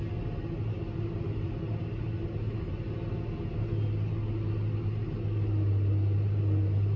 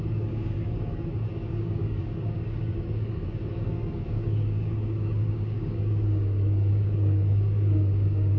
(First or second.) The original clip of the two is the first